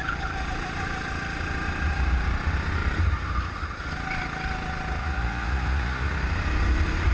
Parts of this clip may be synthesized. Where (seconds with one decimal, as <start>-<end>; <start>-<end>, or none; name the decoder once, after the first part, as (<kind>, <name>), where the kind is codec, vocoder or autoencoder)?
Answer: 5.0-6.1 (vocoder, Vocos)